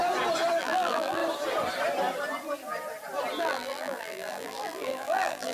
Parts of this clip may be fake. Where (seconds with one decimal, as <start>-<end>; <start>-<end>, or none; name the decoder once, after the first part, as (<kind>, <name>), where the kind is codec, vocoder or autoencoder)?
0.6-1.2 (vocoder, BigVGAN v2); 3.4-5.5